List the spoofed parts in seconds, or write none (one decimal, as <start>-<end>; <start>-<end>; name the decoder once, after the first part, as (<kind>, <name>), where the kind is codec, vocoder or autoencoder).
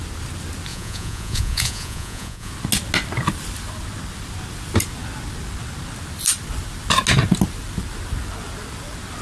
0.7-2.5 (vocoder, Vocos)